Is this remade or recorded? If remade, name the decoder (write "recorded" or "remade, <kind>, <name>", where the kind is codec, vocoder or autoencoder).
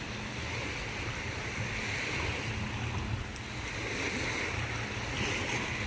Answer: recorded